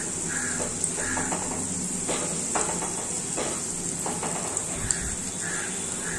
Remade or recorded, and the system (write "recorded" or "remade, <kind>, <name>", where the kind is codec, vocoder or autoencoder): recorded